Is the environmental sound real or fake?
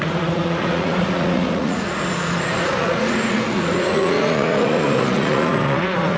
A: fake